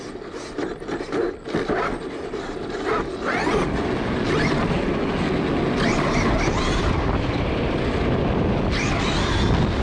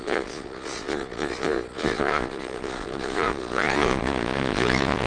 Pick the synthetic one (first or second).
second